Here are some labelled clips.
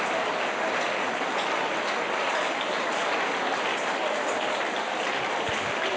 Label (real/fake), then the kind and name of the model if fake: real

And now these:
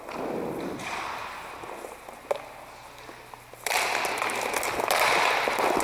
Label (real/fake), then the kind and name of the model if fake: real